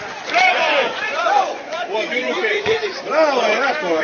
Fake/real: fake